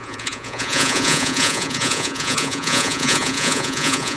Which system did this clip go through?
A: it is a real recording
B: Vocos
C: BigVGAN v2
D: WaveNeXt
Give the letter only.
B